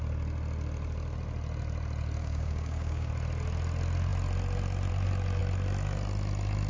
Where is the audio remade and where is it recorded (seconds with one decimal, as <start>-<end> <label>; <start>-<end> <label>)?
0.0-2.2 recorded; 2.2-3.1 remade; 3.1-6.7 recorded